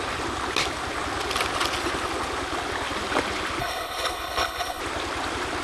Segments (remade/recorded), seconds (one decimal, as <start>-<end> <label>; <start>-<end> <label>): 0.0-3.6 recorded; 3.6-4.8 remade; 4.8-5.6 recorded